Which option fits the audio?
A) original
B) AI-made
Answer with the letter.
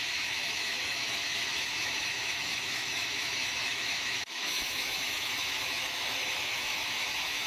B